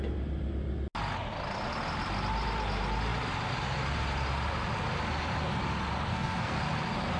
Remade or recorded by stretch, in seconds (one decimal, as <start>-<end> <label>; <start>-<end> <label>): 0.0-6.1 recorded; 6.1-6.6 remade; 6.6-7.2 recorded